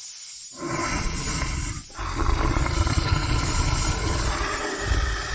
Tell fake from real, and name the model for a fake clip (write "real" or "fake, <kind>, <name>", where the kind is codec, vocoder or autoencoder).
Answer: real